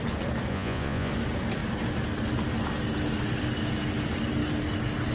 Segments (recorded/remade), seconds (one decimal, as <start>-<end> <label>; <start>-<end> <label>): 0.0-0.5 recorded; 0.5-1.1 remade; 1.1-5.1 recorded